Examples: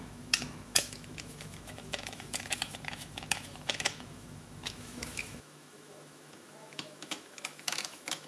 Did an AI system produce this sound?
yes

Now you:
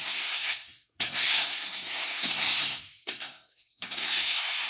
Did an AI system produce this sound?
yes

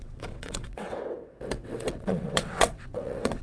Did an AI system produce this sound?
yes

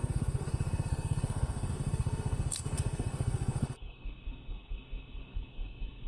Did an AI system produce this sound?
yes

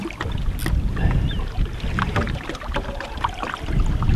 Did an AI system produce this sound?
no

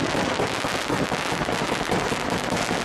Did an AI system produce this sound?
no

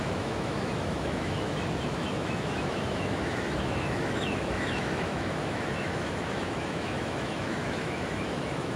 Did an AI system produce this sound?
yes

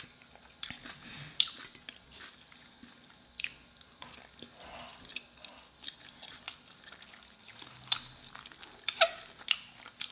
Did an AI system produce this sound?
no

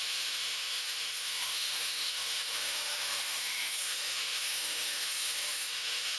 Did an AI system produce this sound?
yes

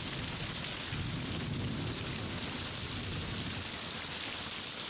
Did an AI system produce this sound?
no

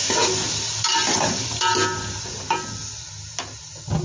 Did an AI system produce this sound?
no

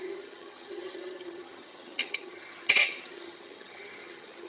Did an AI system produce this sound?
yes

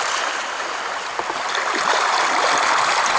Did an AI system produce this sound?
no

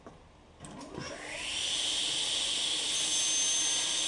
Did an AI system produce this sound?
no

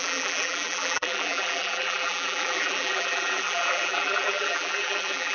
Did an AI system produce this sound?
yes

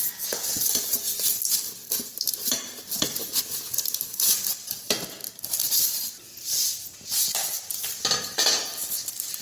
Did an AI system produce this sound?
no